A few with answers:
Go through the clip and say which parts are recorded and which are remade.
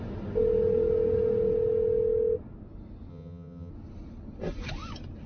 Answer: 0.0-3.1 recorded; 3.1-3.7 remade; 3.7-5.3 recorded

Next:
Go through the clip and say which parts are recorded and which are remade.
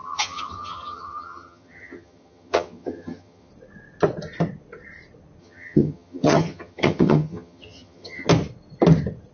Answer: 0.0-3.5 remade; 3.5-5.4 recorded; 5.4-8.3 remade; 8.3-9.3 recorded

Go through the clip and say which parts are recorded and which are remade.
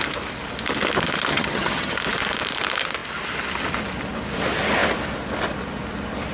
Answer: 0.0-1.3 recorded; 1.3-2.0 remade; 2.0-6.3 recorded